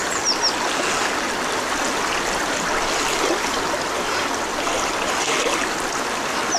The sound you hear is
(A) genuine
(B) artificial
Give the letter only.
A